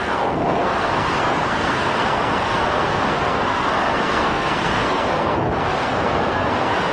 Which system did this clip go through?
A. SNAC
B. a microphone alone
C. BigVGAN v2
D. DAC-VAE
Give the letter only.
A